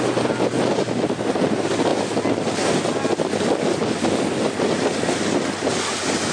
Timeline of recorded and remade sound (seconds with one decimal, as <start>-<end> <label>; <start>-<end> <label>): 0.0-6.3 recorded